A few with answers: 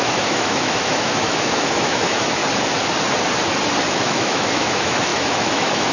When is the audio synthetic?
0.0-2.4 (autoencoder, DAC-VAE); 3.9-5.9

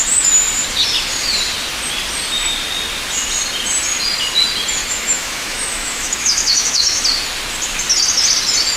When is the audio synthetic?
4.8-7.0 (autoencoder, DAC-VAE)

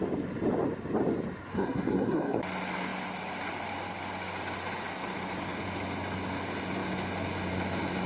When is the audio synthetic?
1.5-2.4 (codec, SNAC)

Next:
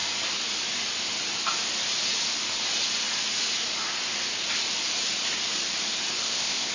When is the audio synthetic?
6.2-6.7 (codec, ZipCodec)

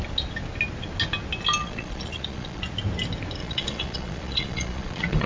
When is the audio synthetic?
1.6-2.6 (vocoder, Vocos); 3.4-5.3

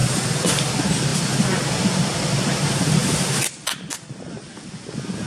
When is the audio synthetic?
0.0-0.7 (vocoder, BigVGAN v2); 3.0-4.2